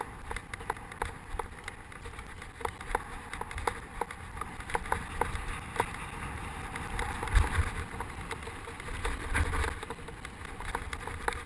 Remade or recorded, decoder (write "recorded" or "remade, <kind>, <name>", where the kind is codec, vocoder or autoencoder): remade, vocoder, BigVGAN v2